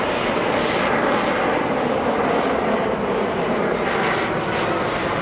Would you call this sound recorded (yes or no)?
yes